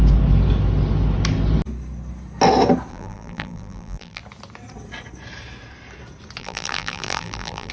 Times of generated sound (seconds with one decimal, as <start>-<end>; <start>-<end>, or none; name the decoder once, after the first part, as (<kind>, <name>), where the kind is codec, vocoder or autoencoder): 2.9-4.2 (vocoder, BigVGAN v2); 6.4-7.7